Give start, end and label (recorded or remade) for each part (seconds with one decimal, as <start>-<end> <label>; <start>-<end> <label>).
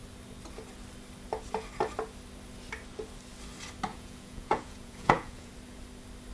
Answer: 0.0-3.9 recorded; 3.9-5.5 remade; 5.5-6.3 recorded